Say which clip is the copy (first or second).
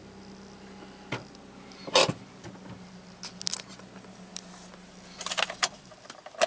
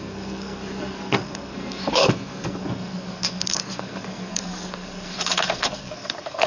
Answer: second